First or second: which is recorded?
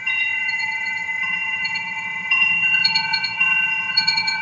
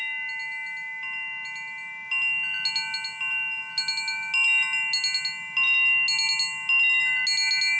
second